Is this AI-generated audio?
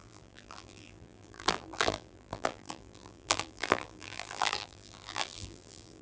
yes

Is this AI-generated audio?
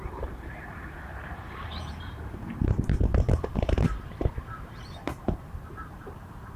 yes